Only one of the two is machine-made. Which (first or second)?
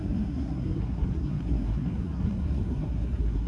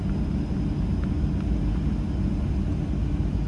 first